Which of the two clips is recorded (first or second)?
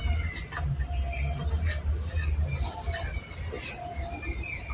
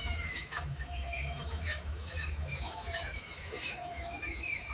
first